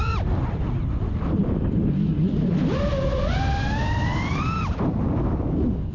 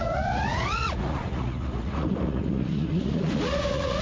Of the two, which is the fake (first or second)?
second